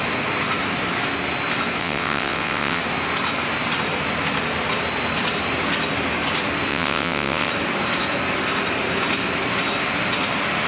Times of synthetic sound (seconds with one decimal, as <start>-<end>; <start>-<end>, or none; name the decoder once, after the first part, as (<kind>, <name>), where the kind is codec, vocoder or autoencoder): 1.8-2.8 (vocoder, WaveNeXt); 6.7-7.5